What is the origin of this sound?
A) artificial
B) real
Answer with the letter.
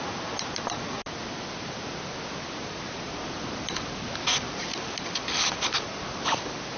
B